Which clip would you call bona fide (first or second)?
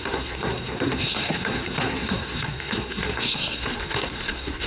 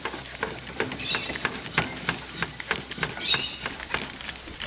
second